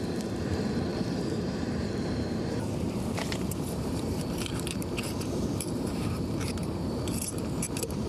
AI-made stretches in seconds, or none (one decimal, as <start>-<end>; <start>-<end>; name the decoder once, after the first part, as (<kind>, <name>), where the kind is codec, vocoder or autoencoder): 0.0-8.1 (vocoder, BigVGAN v2)

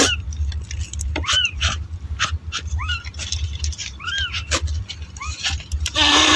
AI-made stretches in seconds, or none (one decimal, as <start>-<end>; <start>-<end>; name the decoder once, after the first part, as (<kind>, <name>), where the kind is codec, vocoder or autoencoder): 0.9-4.3 (vocoder, BigVGAN v2)

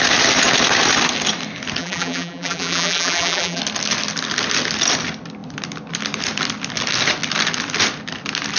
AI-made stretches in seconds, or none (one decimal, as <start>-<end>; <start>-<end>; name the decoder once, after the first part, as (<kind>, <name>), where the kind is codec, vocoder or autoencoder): 1.8-3.6 (vocoder, BigVGAN v2)